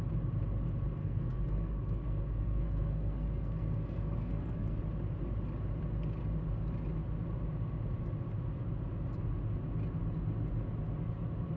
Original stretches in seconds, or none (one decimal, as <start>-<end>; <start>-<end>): 0.0-1.0; 4.8-11.6